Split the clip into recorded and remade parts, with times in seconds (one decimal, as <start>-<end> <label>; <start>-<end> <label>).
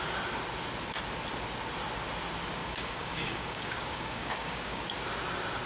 0.0-2.6 recorded; 2.6-4.8 remade; 4.8-5.7 recorded